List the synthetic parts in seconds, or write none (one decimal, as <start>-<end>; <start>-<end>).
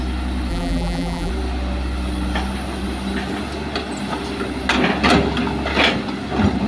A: 0.5-1.3